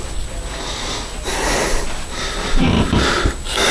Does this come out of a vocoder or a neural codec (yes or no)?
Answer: no